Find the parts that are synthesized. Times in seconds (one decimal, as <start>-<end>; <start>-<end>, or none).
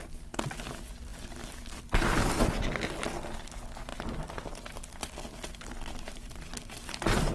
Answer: none